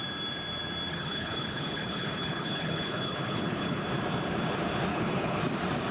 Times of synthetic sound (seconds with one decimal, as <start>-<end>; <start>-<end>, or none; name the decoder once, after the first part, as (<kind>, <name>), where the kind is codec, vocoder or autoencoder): 0.9-3.8 (codec, HILCodec); 4.9-5.4